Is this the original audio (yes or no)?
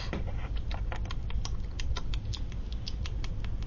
yes